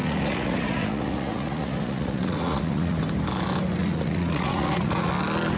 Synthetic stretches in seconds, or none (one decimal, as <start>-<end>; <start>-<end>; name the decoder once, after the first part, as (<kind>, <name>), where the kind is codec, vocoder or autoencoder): 0.0-3.0 (vocoder, Vocos); 3.8-5.1